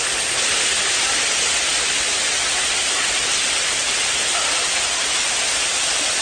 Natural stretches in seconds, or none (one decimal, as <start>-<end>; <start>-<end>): 0.0-6.2